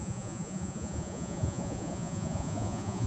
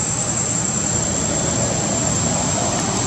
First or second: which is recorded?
second